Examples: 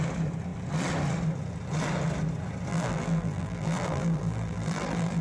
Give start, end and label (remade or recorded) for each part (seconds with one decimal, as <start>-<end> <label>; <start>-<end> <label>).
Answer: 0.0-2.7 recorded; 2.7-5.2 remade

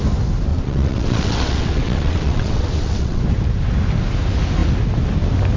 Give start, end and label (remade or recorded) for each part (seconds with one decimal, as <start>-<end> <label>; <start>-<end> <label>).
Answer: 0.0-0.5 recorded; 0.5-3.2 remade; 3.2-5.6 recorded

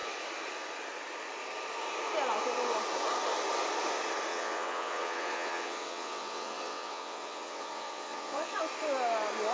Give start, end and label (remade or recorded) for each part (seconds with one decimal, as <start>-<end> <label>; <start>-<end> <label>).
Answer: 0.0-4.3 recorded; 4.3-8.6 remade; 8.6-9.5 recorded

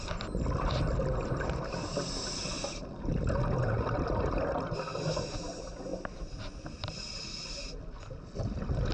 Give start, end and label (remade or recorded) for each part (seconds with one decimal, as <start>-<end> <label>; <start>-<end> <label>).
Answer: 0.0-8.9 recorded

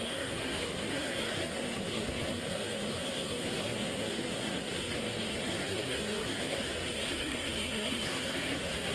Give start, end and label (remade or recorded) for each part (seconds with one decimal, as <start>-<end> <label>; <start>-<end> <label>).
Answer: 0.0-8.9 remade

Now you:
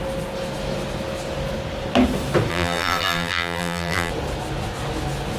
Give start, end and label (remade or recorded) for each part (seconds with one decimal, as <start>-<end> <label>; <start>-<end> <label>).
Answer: 0.0-2.5 recorded; 2.5-4.1 remade; 4.1-5.4 recorded

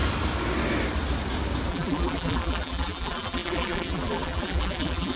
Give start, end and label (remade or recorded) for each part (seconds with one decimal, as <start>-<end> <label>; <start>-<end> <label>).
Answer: 0.0-1.7 recorded; 1.7-5.2 remade

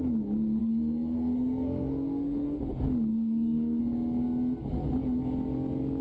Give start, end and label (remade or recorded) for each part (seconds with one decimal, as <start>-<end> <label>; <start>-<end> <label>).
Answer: 0.0-0.6 recorded; 0.6-2.6 remade; 2.6-3.1 recorded; 3.1-3.8 remade; 3.8-6.0 recorded